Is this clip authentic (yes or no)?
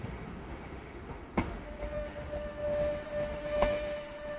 no